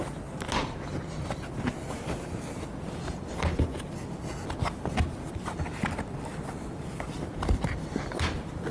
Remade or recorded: recorded